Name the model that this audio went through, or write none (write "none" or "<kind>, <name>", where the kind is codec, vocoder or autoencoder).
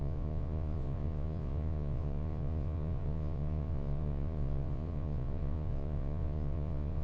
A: vocoder, Vocos